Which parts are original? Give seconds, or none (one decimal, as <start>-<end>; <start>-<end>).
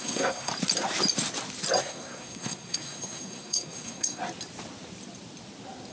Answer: 0.5-1.8; 4.2-5.9